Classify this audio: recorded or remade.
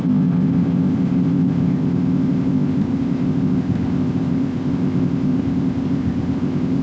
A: remade